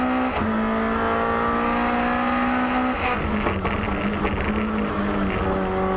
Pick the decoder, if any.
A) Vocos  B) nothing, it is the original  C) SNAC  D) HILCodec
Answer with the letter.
B